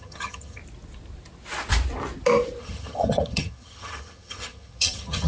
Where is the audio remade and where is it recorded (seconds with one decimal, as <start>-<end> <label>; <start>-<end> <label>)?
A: 0.0-0.6 remade; 0.6-2.6 recorded; 2.6-5.3 remade